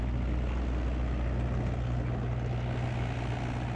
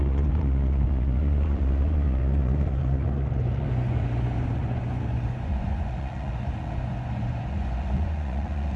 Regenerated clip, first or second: second